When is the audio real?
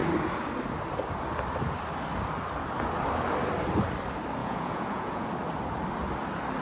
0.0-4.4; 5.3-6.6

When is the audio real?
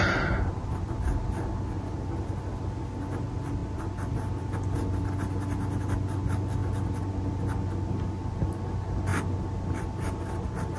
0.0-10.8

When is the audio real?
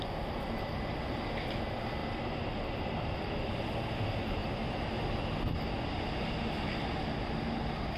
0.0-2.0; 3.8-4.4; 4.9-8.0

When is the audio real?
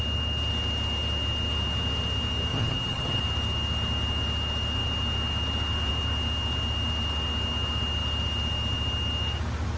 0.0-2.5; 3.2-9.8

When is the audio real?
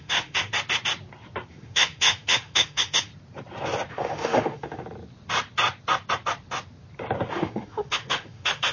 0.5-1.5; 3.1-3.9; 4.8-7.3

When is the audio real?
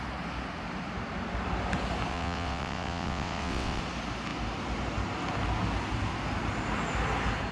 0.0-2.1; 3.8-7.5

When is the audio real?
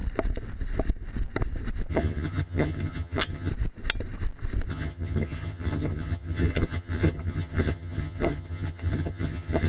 0.0-1.9; 3.5-4.7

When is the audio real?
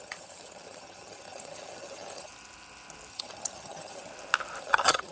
2.3-3.1; 4.1-4.6